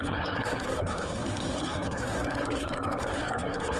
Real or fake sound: fake